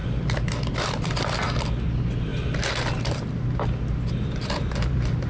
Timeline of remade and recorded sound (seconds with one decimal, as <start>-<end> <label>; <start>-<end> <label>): 0.0-0.5 recorded; 0.5-2.3 remade; 2.3-4.1 recorded; 4.1-5.3 remade